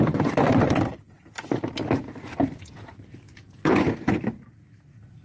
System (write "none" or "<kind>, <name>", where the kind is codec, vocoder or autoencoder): vocoder, BigVGAN v2